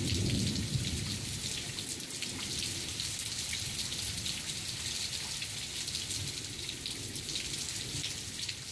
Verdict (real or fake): real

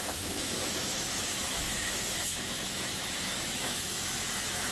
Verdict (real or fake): fake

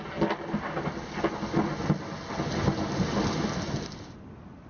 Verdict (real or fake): real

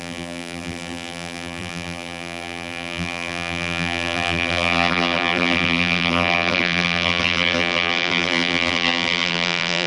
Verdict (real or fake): fake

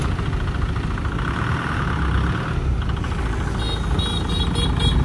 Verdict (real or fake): real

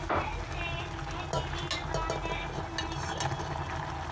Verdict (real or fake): real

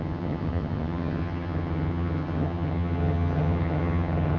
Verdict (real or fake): fake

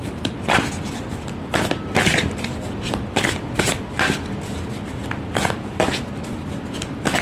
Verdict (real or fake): real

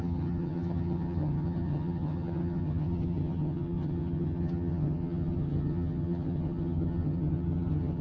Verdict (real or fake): fake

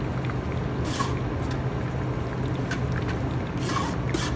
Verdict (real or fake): real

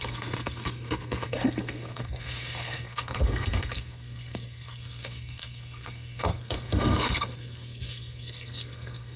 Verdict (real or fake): fake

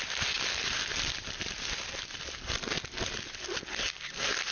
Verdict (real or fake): real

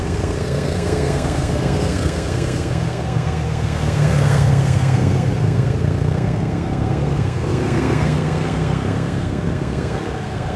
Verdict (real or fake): fake